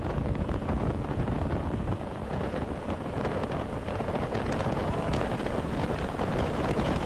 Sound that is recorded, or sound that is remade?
remade